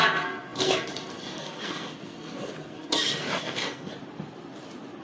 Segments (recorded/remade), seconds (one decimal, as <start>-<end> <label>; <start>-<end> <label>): 0.0-3.9 remade; 3.9-5.0 recorded

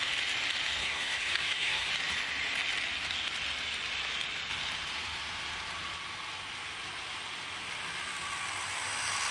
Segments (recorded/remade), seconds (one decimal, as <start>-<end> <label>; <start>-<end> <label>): 0.0-0.8 recorded; 0.8-1.9 remade; 1.9-9.3 recorded

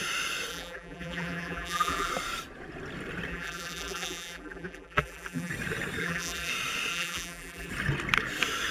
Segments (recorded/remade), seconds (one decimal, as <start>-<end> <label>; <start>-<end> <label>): 0.0-0.5 recorded; 0.5-2.1 remade; 2.1-3.3 recorded; 3.3-5.5 remade; 5.5-6.0 recorded; 6.0-6.5 remade; 6.5-6.9 recorded; 6.9-7.7 remade; 7.7-8.7 recorded

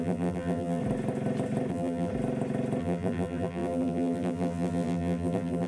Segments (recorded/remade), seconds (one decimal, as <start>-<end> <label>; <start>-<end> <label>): 0.0-0.8 remade; 0.8-1.7 recorded; 1.7-2.1 remade; 2.1-2.8 recorded; 2.8-5.7 remade

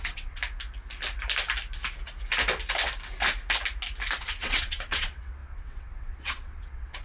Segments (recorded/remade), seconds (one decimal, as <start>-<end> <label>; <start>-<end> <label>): 0.0-0.4 remade; 0.4-4.2 recorded; 4.2-7.0 remade